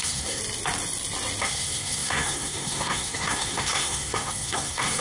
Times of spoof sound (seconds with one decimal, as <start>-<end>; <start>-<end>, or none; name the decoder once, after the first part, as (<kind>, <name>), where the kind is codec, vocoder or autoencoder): 0.0-0.4 (codec, SNAC); 1.4-5.0